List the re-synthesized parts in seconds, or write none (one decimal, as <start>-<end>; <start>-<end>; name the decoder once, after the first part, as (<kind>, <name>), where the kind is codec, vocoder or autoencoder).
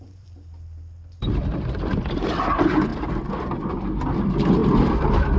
0.0-5.4 (vocoder, BigVGAN v2)